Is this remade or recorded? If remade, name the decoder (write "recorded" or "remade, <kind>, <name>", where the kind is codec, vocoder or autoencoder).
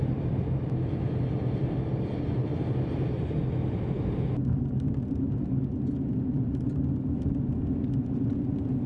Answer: recorded